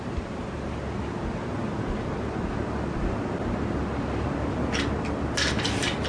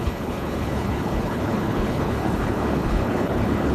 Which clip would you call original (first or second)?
first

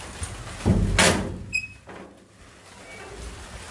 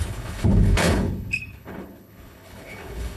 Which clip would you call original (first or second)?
first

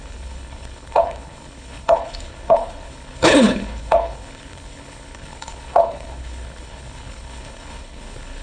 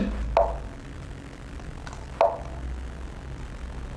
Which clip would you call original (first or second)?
second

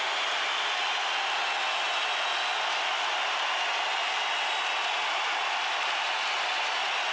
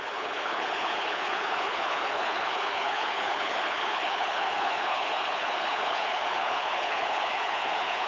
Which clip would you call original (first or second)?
first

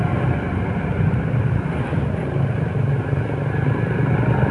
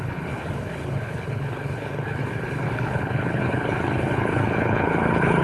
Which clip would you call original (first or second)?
first